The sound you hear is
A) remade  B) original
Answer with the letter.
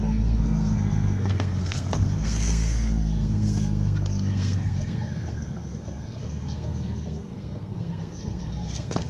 A